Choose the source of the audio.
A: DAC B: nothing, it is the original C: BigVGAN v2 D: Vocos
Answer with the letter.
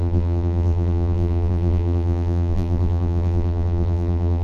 C